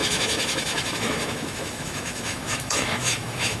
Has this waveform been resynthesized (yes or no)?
yes